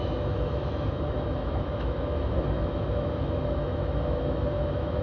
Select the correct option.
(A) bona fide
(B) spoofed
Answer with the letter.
B